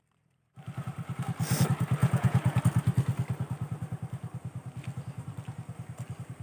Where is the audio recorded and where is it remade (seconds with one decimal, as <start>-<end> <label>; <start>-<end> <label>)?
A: 0.0-2.0 recorded; 2.0-2.6 remade; 2.6-6.4 recorded